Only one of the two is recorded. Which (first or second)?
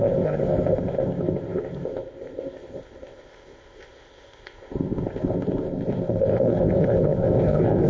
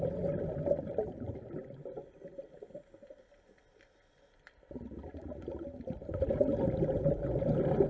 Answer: second